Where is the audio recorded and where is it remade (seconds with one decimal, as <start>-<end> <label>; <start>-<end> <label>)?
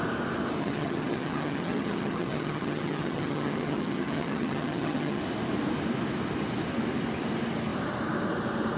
0.0-0.6 recorded; 0.6-5.2 remade; 5.2-8.8 recorded